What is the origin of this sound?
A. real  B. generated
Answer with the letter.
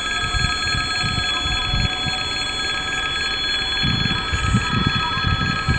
A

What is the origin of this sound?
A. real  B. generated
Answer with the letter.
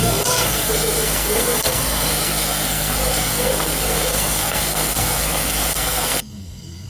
B